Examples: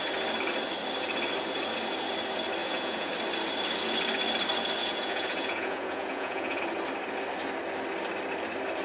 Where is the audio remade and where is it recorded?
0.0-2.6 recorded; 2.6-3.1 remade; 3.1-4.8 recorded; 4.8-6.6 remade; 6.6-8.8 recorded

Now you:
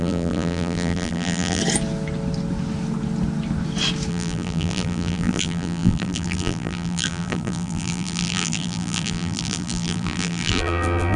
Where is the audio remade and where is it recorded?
0.0-1.6 remade; 1.6-4.1 recorded; 4.1-11.2 remade

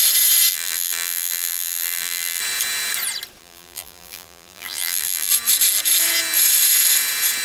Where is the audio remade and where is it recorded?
0.0-0.5 recorded; 0.5-2.4 remade; 2.4-3.4 recorded; 3.4-5.3 remade; 5.3-7.4 recorded

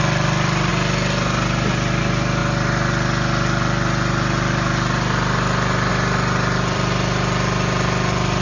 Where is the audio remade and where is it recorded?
0.0-0.7 remade; 0.7-2.0 recorded; 2.0-2.4 remade; 2.4-5.9 recorded; 5.9-8.4 remade

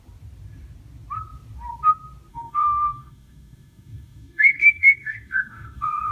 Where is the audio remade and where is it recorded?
0.0-2.3 recorded; 2.3-6.1 remade

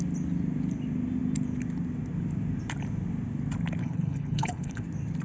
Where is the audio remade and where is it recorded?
0.0-3.8 recorded; 3.8-4.8 remade; 4.8-5.2 recorded

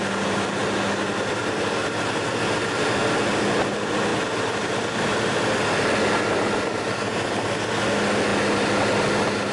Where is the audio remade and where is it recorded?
0.0-9.5 recorded

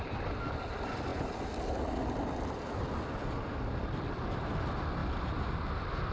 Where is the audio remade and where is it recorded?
0.0-6.1 recorded